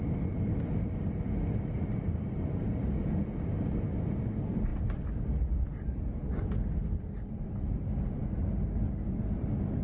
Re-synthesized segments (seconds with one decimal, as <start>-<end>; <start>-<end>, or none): none